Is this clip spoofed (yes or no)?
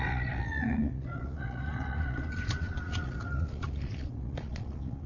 yes